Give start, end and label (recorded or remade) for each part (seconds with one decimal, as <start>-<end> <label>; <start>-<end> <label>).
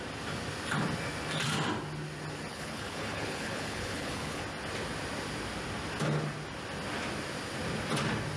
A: 0.0-2.5 recorded; 2.5-4.4 remade; 4.4-8.4 recorded